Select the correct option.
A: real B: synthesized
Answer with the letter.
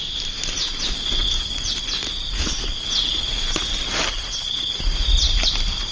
A